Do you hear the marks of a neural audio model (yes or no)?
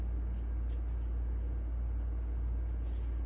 no